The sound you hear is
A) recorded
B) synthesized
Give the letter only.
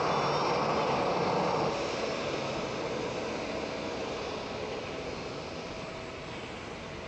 A